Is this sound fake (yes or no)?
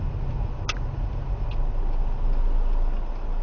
no